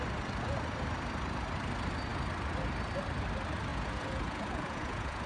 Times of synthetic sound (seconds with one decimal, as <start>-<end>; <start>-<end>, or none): 3.7-5.3